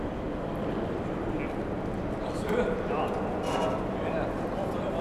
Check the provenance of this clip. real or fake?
real